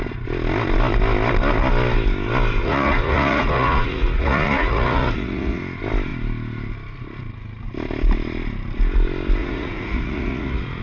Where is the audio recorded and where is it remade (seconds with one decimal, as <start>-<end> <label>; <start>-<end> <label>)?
0.0-2.6 recorded; 2.6-5.6 remade; 5.6-9.4 recorded; 9.4-10.8 remade